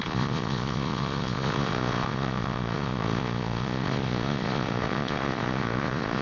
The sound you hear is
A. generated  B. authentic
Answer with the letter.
A